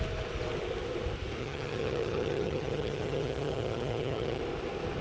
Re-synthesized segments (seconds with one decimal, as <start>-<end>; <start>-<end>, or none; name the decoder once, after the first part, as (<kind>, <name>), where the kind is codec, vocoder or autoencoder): 1.4-4.4 (vocoder, HiFi-GAN)